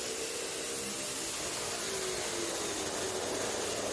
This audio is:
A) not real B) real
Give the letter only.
B